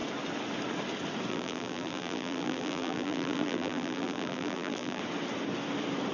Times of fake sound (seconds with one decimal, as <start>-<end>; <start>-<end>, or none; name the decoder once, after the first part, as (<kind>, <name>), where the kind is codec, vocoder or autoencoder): 1.3-5.0 (vocoder, BigVGAN v2)